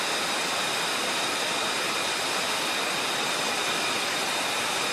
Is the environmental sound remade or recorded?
recorded